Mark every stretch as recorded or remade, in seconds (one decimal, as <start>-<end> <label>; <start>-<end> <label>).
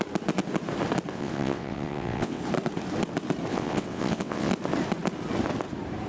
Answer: 0.0-1.1 recorded; 1.1-2.4 remade; 2.4-3.5 recorded; 3.5-4.5 remade; 4.5-6.1 recorded